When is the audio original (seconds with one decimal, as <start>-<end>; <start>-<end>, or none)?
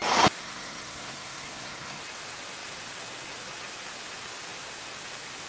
0.0-0.4; 2.0-5.5